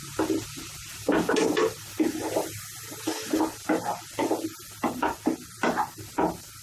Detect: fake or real real